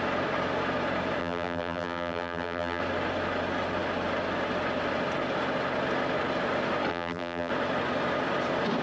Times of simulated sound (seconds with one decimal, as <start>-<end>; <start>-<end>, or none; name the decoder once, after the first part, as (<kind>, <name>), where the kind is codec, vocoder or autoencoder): 1.2-2.8 (vocoder, BigVGAN v2); 6.9-7.5